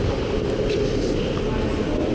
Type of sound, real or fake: real